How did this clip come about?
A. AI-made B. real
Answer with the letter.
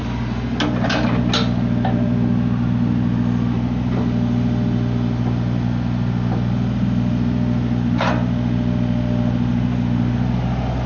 B